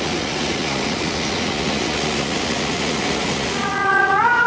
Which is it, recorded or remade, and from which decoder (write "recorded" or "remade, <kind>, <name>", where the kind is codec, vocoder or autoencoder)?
remade, vocoder, Vocos